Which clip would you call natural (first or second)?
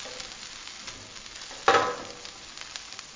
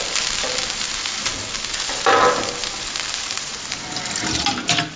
first